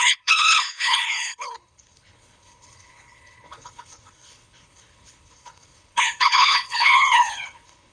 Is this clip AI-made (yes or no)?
yes